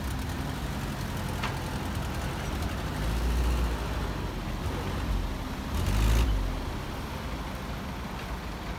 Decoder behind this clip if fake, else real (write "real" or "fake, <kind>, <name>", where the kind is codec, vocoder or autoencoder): real